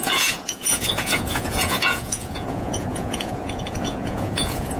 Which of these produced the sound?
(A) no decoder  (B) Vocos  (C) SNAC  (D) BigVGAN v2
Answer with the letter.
B